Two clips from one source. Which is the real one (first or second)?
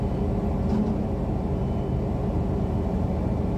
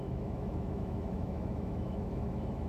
first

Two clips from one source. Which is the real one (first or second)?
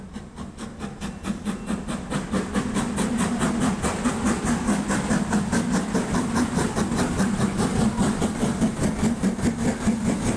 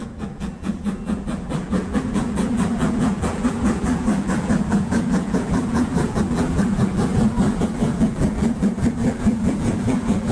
first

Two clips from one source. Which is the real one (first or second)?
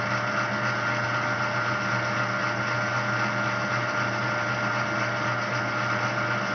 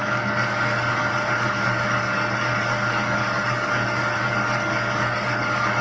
first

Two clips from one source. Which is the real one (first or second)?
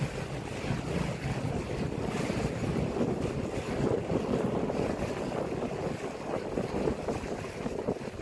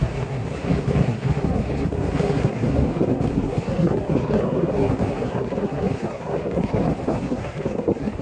first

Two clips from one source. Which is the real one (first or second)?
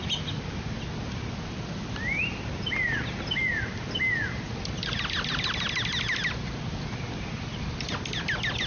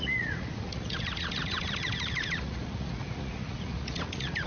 first